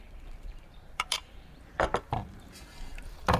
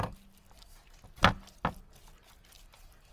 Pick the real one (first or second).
second